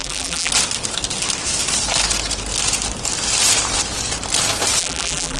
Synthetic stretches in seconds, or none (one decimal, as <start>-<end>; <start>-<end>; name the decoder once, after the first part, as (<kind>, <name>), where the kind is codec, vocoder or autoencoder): 0.0-0.5 (vocoder, BigVGAN v2); 4.8-5.4